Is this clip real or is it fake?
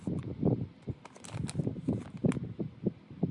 real